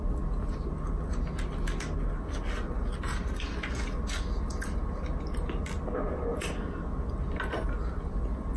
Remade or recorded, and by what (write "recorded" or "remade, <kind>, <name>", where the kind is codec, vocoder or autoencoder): recorded